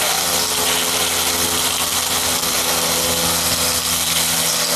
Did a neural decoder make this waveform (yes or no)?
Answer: no